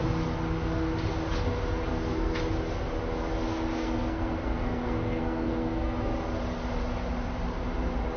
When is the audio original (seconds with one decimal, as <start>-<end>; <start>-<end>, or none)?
0.0-1.9; 2.4-3.8; 6.1-8.2